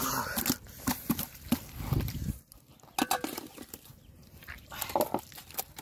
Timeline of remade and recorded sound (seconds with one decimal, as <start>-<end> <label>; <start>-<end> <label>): 0.0-4.2 recorded; 4.2-5.0 remade; 5.0-5.8 recorded